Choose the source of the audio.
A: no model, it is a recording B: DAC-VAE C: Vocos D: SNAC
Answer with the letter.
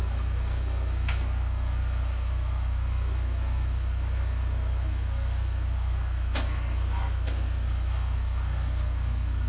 D